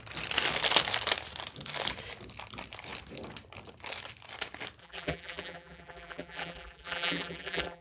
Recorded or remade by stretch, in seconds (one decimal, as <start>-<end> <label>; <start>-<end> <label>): 0.0-4.8 recorded; 4.8-7.8 remade